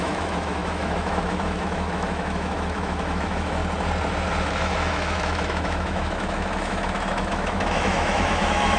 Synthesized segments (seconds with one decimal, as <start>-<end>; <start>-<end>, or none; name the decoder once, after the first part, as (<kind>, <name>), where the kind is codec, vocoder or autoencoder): 0.0-3.6 (autoencoder, DAC-VAE); 4.4-8.8